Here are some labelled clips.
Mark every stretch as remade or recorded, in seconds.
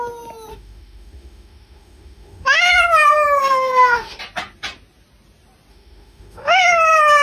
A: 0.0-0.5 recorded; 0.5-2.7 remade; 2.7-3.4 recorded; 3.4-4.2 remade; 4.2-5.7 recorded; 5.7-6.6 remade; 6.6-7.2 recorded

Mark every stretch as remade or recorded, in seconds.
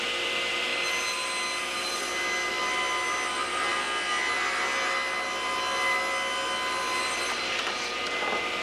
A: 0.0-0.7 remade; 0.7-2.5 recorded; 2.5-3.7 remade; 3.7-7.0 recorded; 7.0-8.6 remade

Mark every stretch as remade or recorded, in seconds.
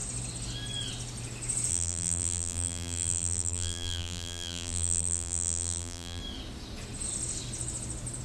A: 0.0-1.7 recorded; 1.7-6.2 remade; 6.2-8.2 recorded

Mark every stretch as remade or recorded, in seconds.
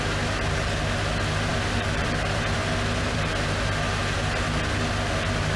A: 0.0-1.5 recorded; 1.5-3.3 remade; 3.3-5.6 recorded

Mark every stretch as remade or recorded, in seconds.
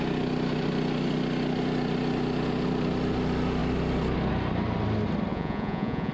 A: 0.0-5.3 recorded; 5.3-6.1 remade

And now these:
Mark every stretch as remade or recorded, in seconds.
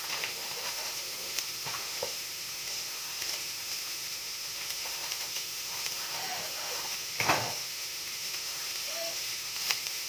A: 0.0-10.1 remade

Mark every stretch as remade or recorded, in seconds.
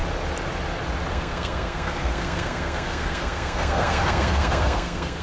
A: 0.0-1.1 recorded; 1.1-5.2 remade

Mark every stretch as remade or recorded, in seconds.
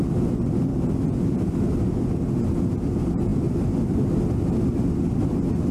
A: 0.0-5.7 recorded